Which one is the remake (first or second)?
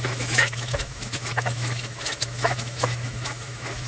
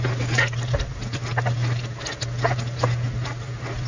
first